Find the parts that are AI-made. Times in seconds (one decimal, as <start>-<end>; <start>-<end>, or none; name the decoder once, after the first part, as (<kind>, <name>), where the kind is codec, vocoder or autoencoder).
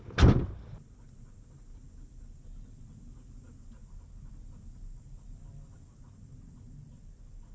none